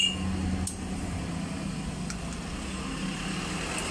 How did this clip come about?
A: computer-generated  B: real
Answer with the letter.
B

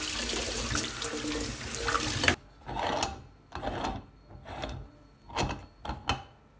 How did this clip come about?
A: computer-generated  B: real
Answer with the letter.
B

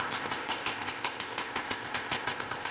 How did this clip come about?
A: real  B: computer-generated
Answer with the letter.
B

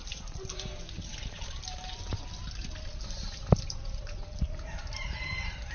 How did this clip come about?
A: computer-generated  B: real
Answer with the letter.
A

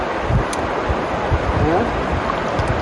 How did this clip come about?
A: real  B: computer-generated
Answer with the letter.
A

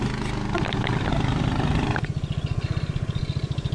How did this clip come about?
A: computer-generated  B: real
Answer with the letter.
B